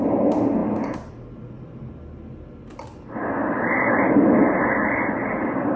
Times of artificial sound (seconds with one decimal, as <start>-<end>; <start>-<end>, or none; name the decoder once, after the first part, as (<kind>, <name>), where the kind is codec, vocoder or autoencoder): none